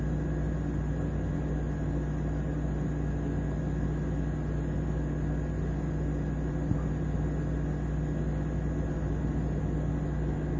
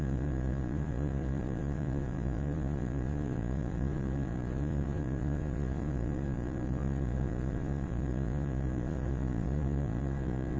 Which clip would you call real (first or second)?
first